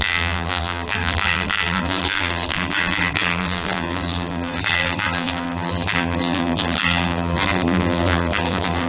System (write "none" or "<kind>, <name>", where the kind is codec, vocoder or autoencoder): vocoder, BigVGAN v2